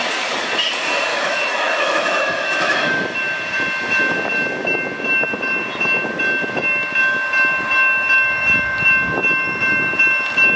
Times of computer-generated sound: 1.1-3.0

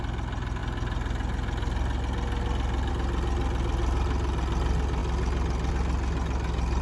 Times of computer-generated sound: none

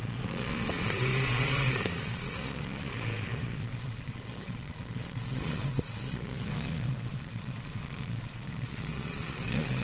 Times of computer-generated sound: 0.0-9.8